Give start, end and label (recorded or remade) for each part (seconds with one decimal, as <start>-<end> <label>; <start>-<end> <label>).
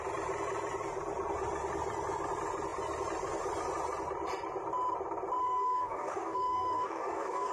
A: 0.0-5.4 recorded; 5.4-7.5 remade